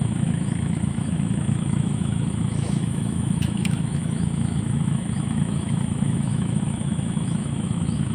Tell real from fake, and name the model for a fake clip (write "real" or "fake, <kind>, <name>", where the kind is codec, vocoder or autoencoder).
fake, autoencoder, DAC-VAE